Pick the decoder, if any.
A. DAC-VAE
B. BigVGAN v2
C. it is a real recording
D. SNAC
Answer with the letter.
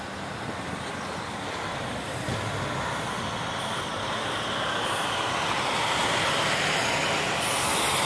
C